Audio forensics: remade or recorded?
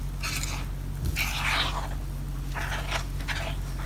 recorded